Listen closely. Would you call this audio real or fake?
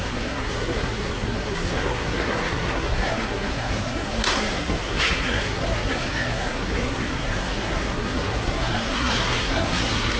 fake